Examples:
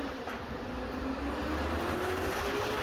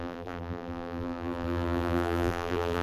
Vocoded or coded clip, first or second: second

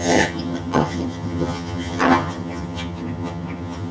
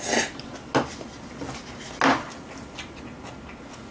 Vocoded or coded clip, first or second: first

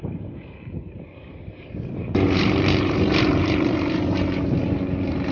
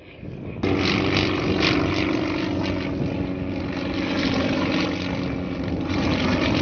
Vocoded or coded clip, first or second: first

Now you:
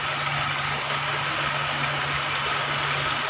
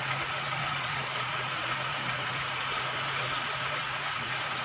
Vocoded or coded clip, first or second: second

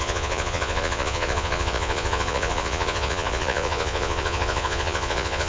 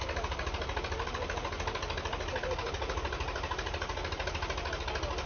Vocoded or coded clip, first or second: first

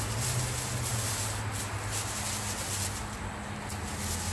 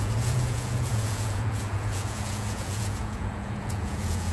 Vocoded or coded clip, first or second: second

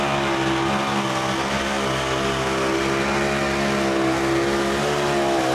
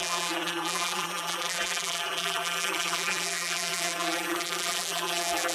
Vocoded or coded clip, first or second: second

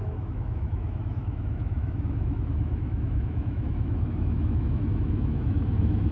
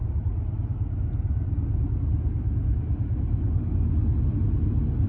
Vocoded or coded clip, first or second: first